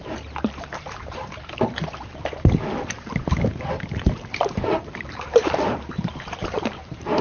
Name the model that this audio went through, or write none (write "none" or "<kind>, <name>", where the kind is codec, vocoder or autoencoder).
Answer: vocoder, BigVGAN v2